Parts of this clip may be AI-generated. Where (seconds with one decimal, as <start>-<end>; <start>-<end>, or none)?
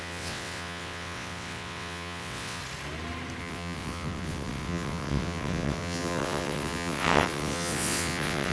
0.0-2.6; 3.4-8.5